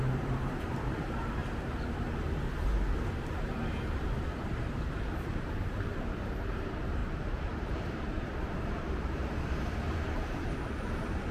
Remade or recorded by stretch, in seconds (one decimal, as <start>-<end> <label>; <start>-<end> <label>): 0.0-11.3 remade